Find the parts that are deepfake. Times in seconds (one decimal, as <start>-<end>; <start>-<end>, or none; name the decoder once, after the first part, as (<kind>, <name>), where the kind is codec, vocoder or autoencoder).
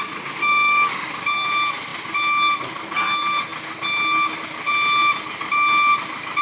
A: 0.4-1.1 (autoencoder, DAC-VAE)